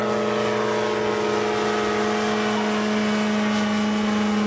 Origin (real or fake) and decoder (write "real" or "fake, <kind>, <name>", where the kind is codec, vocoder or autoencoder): real